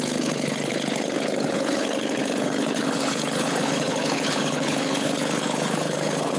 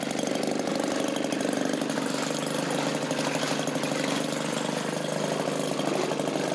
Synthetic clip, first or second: first